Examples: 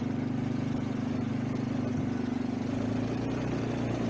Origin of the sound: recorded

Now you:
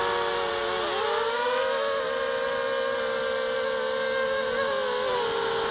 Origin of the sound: recorded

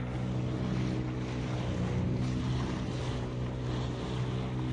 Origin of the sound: recorded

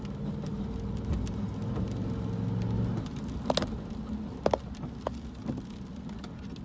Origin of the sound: recorded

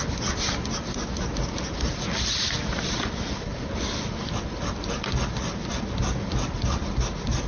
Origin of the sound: recorded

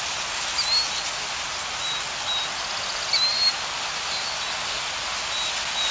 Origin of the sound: recorded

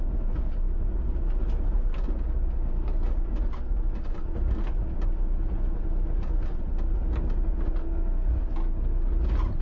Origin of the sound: recorded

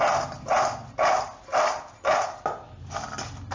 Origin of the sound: recorded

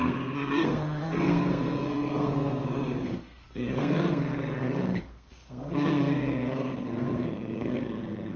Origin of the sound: remade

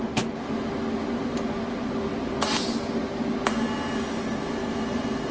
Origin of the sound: recorded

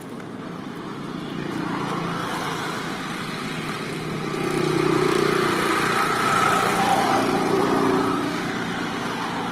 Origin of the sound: recorded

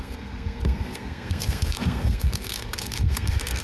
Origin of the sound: remade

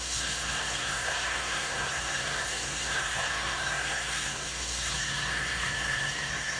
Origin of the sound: remade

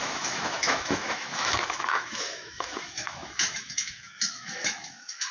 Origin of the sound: remade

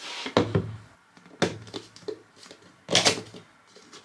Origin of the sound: recorded